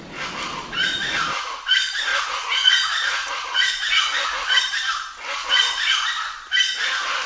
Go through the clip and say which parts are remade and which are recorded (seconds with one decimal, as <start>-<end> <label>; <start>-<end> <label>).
0.0-2.1 recorded; 2.1-4.6 remade; 4.6-5.4 recorded; 5.4-5.9 remade; 5.9-7.3 recorded